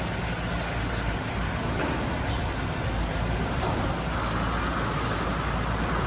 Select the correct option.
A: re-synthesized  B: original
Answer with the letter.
B